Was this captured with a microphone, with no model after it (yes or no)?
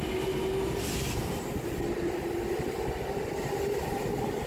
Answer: yes